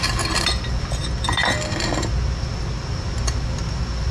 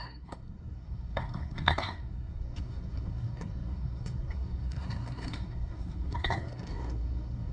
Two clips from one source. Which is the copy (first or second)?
second